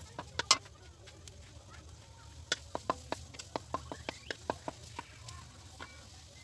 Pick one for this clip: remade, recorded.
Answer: recorded